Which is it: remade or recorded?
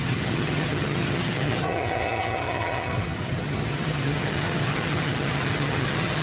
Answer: remade